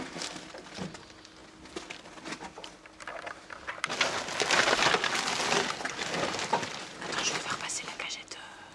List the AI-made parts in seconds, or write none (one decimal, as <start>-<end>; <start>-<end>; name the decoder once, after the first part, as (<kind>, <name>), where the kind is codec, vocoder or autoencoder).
none